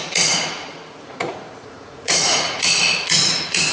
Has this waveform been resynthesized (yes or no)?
yes